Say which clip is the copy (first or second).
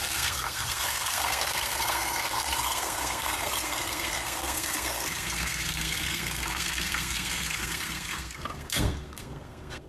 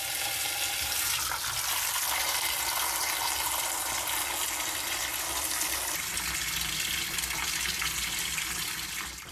first